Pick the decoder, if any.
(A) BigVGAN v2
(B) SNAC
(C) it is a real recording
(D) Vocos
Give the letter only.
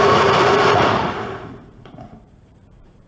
D